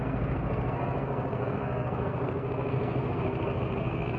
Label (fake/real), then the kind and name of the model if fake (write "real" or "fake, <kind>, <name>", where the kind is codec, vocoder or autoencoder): fake, codec, SNAC